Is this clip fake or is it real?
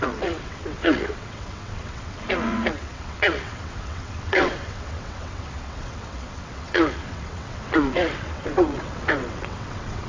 fake